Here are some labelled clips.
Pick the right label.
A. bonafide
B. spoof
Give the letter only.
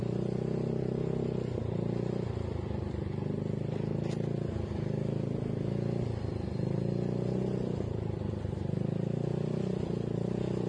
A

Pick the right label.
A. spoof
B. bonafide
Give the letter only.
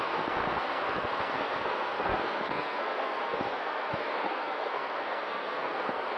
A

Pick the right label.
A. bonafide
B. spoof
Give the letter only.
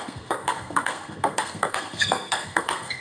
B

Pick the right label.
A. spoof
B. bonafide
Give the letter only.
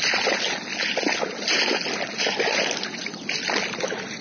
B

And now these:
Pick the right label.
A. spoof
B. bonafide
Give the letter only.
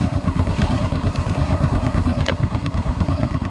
A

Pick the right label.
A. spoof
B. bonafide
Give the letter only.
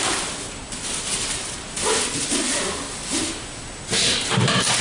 B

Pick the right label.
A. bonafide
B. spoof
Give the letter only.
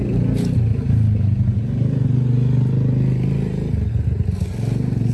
A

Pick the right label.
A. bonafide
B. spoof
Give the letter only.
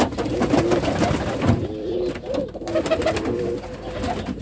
A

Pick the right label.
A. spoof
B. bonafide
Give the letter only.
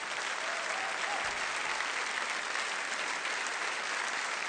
B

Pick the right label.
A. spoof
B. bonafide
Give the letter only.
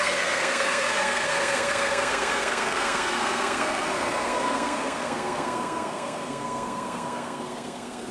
A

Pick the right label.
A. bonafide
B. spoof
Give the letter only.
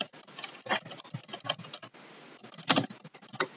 A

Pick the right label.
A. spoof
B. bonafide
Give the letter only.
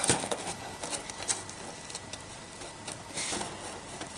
B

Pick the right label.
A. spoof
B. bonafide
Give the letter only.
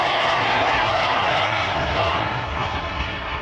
A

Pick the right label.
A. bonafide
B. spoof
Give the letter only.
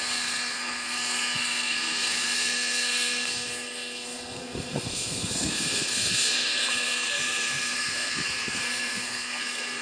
B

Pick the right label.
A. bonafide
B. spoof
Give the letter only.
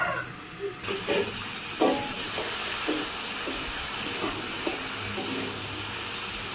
A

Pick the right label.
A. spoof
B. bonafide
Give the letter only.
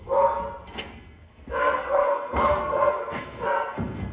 A